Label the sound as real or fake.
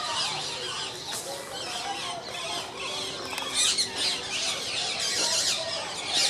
real